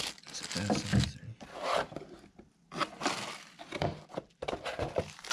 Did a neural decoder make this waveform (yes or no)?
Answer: no